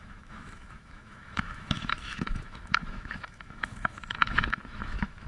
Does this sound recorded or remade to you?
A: remade